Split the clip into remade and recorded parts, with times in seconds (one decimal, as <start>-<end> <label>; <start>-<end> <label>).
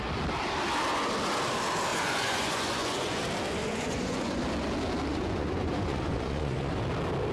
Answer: 0.0-1.9 recorded; 1.9-3.2 remade; 3.2-3.6 recorded; 3.6-4.4 remade; 4.4-5.1 recorded; 5.1-6.8 remade; 6.8-7.3 recorded